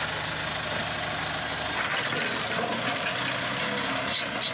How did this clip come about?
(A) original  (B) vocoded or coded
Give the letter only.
A